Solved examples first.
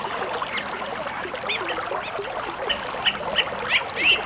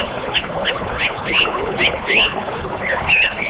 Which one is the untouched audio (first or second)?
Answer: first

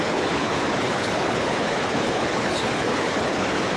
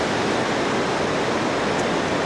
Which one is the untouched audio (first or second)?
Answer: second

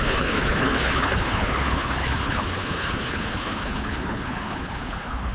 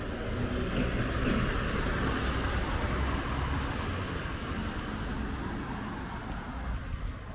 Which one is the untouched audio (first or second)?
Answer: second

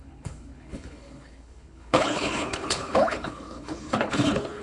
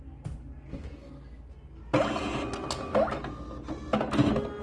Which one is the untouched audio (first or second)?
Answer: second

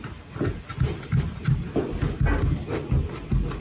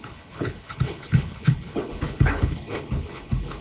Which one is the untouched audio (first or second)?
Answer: first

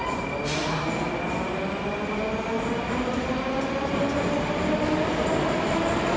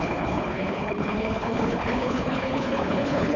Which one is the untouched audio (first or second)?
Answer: first